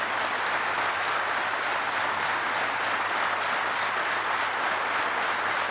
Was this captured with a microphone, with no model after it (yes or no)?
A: yes